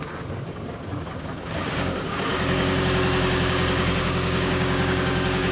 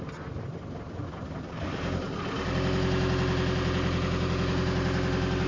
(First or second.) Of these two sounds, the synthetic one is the first